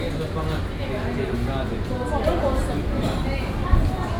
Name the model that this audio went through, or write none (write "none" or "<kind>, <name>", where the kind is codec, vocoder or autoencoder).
none